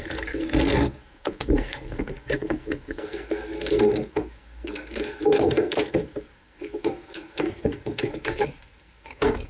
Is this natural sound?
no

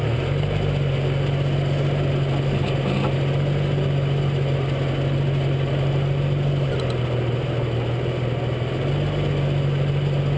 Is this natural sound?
yes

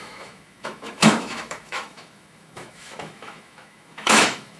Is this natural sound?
no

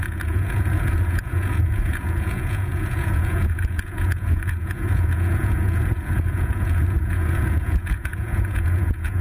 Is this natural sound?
no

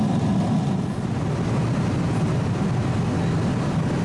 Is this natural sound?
yes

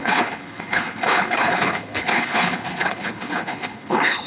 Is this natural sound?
no